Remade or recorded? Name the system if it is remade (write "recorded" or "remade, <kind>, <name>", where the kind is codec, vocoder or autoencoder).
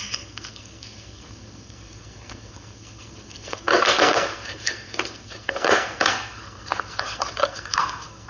remade, codec, SNAC